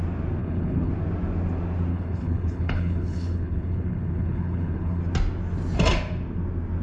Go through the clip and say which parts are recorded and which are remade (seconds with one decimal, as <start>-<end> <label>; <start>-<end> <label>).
0.0-0.4 recorded; 0.4-0.9 remade; 0.9-1.9 recorded; 1.9-5.0 remade; 5.0-6.8 recorded

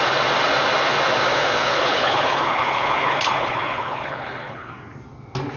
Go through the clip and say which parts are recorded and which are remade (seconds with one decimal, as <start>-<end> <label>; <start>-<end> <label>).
0.0-1.3 recorded; 1.3-4.7 remade; 4.7-5.6 recorded

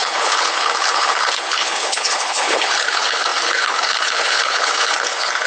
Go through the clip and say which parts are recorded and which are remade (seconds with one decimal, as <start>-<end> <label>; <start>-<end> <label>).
0.0-5.5 remade

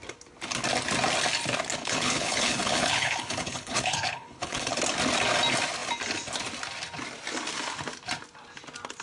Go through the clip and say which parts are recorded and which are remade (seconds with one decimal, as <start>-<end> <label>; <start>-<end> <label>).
0.0-1.8 recorded; 1.8-4.8 remade; 4.8-9.0 recorded

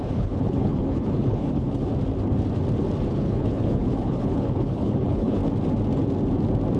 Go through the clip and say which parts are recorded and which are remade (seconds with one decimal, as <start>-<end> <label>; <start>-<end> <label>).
0.0-1.9 remade; 1.9-3.1 recorded; 3.1-5.4 remade; 5.4-6.8 recorded

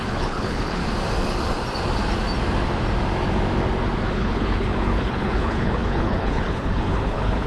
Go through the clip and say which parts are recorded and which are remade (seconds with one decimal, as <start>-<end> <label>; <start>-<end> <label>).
0.0-0.8 remade; 0.8-4.1 recorded; 4.1-7.5 remade

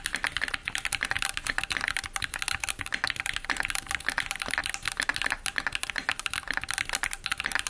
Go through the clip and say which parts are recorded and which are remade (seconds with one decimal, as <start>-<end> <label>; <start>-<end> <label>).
0.0-7.7 recorded

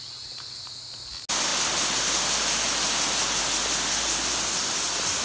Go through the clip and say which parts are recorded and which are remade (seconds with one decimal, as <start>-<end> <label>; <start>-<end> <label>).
0.0-5.2 recorded